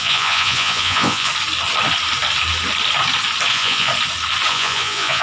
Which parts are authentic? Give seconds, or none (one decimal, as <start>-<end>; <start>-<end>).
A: 1.3-3.5; 3.9-4.5